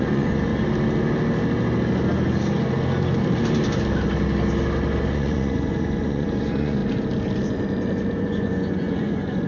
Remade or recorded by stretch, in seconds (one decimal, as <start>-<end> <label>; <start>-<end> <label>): 0.0-0.5 remade; 0.5-5.1 recorded; 5.1-6.8 remade; 6.8-8.2 recorded; 8.2-9.5 remade